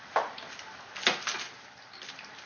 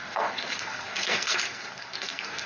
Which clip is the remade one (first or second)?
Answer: second